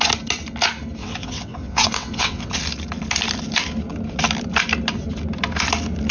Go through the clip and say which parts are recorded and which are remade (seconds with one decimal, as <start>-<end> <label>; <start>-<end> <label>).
0.0-1.0 recorded; 1.0-2.5 remade; 2.5-6.1 recorded